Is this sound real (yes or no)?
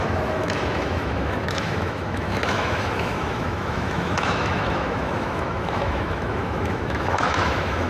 no